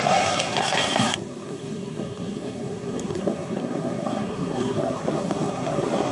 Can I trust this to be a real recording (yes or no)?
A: no